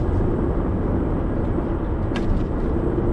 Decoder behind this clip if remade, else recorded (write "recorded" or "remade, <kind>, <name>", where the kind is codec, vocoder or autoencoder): recorded